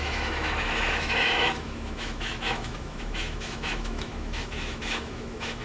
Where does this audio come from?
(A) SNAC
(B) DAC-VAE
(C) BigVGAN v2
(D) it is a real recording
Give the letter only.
B